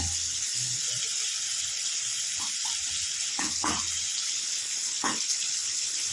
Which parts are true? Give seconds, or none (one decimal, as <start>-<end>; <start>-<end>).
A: 0.8-3.3; 3.7-4.3